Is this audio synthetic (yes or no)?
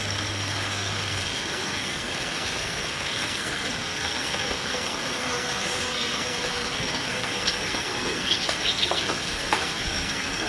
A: yes